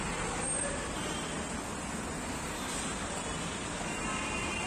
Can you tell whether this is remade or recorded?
recorded